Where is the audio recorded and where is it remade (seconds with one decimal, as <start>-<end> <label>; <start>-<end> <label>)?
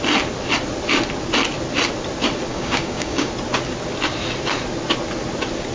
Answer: 0.0-2.5 recorded; 2.5-3.3 remade; 3.3-5.7 recorded